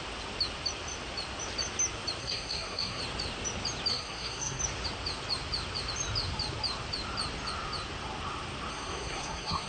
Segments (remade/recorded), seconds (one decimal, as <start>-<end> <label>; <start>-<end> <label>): 0.0-2.2 recorded; 2.2-3.0 remade; 3.0-3.9 recorded; 3.9-4.6 remade; 4.6-8.7 recorded; 8.7-9.7 remade